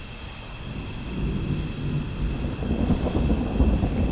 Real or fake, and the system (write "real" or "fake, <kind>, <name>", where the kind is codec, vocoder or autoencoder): real